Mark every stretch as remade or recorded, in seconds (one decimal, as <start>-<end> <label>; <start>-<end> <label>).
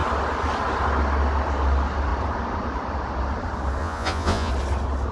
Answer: 0.0-3.8 recorded; 3.8-4.5 remade; 4.5-5.1 recorded